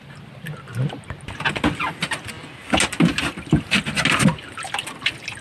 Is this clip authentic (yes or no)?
yes